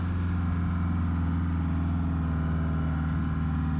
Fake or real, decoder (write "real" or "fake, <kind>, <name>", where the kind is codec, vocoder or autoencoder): real